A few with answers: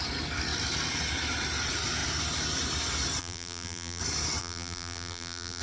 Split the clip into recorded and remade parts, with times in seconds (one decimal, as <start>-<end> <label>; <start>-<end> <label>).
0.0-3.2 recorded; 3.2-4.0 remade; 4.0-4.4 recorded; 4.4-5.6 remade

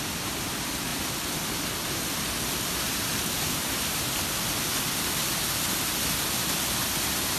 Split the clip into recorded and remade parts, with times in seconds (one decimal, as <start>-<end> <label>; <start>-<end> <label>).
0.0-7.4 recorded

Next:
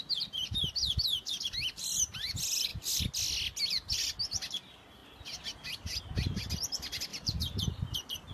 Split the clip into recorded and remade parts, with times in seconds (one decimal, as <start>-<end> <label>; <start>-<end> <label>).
0.0-7.1 recorded; 7.1-8.3 remade

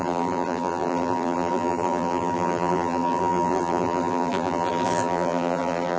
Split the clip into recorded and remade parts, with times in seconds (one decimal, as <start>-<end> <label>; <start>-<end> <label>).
0.0-6.0 remade

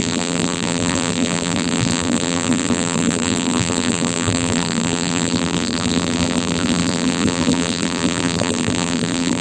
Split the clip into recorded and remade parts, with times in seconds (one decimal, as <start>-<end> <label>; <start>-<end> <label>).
0.0-9.4 remade

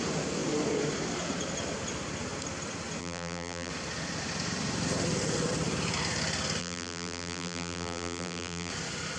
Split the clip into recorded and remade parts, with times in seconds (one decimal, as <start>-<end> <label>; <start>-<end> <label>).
0.0-3.0 recorded; 3.0-3.7 remade; 3.7-6.6 recorded; 6.6-8.7 remade; 8.7-9.2 recorded

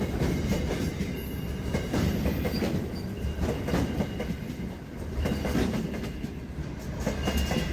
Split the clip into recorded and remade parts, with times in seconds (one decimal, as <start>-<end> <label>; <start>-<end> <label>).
0.0-0.9 recorded; 0.9-2.9 remade; 2.9-7.7 recorded

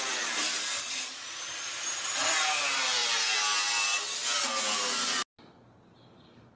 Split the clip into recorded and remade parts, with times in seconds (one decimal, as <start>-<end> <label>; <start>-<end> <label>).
0.0-3.0 remade; 3.0-3.7 recorded; 3.7-4.2 remade; 4.2-6.6 recorded